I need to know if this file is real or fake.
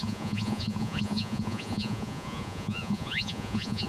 fake